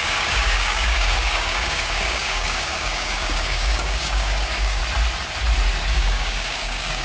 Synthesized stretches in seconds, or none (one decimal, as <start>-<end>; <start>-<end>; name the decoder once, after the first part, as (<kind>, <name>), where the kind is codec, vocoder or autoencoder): 0.0-4.8 (codec, DAC); 5.9-7.0